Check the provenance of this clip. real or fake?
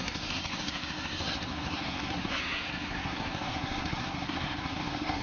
fake